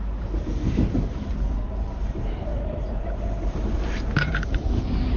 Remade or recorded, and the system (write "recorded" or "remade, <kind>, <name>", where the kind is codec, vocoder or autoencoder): remade, vocoder, BigVGAN v2